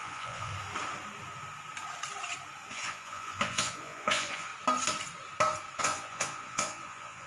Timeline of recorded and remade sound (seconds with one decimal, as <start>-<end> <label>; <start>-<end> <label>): 0.0-0.5 remade; 0.5-2.7 recorded; 2.7-4.5 remade; 4.5-5.8 recorded; 5.8-7.3 remade

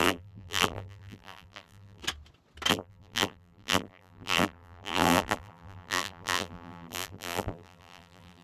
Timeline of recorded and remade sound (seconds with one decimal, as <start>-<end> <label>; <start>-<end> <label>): 0.0-2.0 remade; 2.0-2.7 recorded; 2.7-8.4 remade